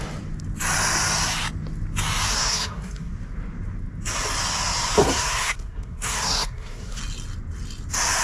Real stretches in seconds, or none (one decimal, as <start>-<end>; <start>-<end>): 0.0-2.3; 3.1-5.0; 7.0-8.2